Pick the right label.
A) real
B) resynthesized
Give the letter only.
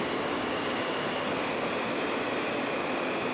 A